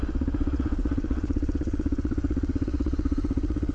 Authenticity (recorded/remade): remade